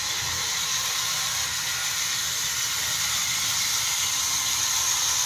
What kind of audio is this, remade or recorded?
recorded